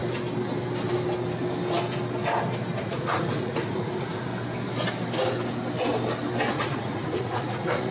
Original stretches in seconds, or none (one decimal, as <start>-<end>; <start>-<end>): 0.0-2.8; 4.3-6.5